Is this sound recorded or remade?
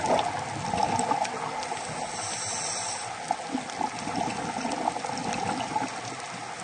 recorded